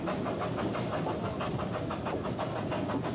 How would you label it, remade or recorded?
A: recorded